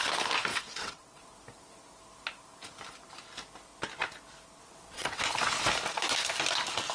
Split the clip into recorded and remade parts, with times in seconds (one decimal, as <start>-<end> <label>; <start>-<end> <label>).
0.0-0.5 recorded; 0.5-1.2 remade; 1.2-4.6 recorded; 4.6-5.2 remade; 5.2-6.9 recorded